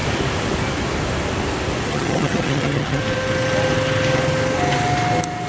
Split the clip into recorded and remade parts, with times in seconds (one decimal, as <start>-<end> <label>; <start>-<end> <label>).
0.0-1.9 recorded; 1.9-3.0 remade; 3.0-5.5 recorded